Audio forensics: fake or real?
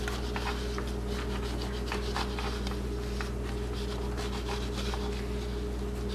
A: real